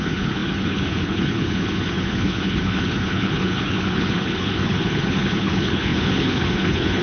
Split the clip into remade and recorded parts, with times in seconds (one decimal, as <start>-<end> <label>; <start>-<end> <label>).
0.0-7.0 remade